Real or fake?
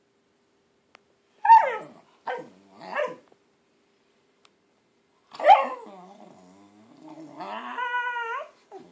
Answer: real